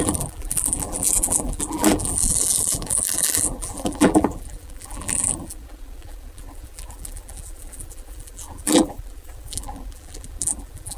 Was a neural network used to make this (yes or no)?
yes